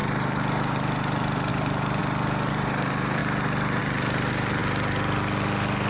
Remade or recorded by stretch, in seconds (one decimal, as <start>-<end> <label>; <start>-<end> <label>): 0.0-2.0 remade; 2.0-2.5 recorded; 2.5-3.2 remade; 3.2-3.8 recorded; 3.8-4.6 remade; 4.6-5.9 recorded